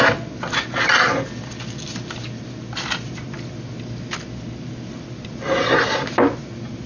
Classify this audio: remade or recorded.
recorded